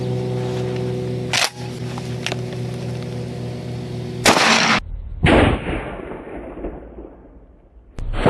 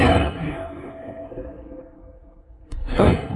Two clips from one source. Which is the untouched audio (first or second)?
first